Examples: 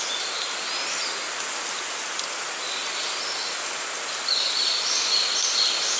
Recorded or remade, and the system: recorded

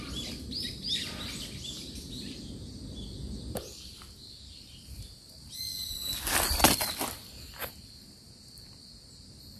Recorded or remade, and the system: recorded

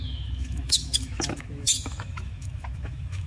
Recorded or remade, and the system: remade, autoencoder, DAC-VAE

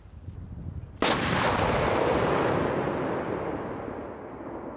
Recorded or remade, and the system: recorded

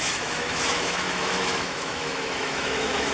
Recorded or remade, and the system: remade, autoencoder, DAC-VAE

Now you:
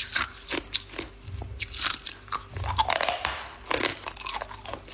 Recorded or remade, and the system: recorded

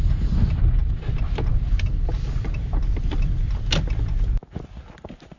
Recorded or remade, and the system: recorded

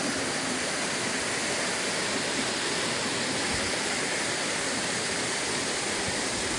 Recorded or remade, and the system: recorded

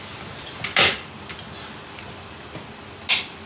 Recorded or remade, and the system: recorded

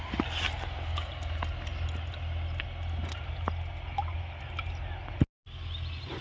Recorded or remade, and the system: recorded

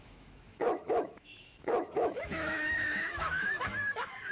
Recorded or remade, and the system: remade, autoencoder, DAC-VAE